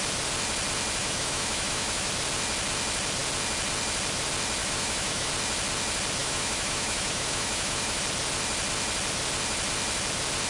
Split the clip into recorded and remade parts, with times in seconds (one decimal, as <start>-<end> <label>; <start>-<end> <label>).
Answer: 0.0-1.0 recorded; 1.0-2.1 remade; 2.1-4.6 recorded; 4.6-5.3 remade; 5.3-6.2 recorded; 6.2-8.0 remade; 8.0-10.5 recorded